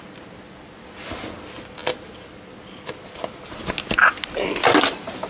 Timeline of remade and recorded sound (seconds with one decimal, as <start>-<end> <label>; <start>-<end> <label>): 0.0-5.3 recorded